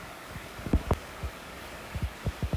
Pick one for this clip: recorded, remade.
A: remade